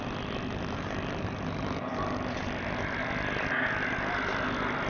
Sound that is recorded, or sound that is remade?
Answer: recorded